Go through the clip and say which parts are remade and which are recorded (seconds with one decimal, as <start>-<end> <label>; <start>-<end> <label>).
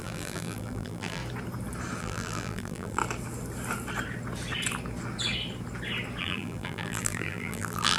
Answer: 0.0-1.2 remade; 1.2-2.0 recorded; 2.0-3.0 remade; 3.0-6.2 recorded; 6.2-8.0 remade